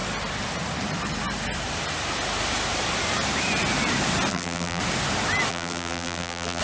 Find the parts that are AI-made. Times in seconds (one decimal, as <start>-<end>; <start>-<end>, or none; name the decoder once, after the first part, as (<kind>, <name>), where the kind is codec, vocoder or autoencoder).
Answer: 4.3-4.8 (vocoder, BigVGAN v2); 5.5-6.6